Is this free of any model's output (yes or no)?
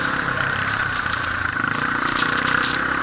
no